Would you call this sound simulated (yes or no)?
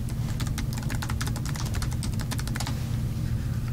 no